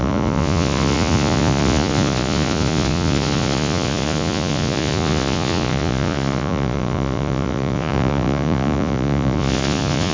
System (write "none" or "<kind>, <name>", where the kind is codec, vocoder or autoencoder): vocoder, Vocos